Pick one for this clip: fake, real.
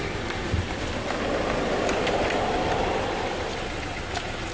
real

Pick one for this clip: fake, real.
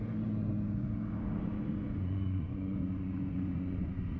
fake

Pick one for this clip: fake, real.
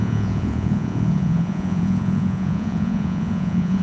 fake